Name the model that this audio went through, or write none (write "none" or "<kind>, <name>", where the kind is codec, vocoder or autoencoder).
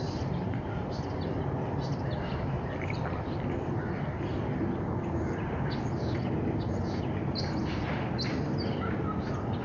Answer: none